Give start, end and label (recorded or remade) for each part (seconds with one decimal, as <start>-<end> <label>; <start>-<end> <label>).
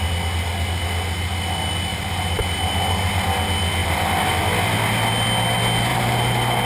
0.0-1.9 recorded; 1.9-2.9 remade; 2.9-3.8 recorded; 3.8-4.4 remade; 4.4-5.9 recorded; 5.9-6.7 remade